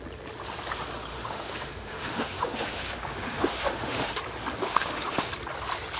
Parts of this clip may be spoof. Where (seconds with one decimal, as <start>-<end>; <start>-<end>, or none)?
1.1-4.2; 4.7-5.3